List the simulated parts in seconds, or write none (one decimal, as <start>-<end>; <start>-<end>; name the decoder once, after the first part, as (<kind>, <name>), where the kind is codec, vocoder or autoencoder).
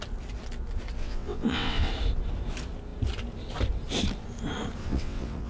1.0-1.9 (vocoder, WaveNeXt); 4.8-5.5